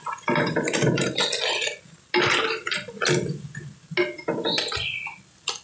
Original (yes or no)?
yes